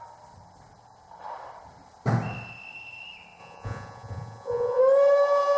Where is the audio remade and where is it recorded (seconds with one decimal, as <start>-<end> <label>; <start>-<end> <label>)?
0.0-3.4 recorded; 3.4-4.8 remade; 4.8-5.6 recorded